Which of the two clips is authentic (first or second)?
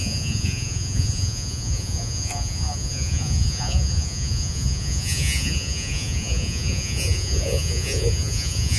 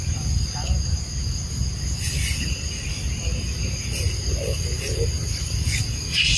second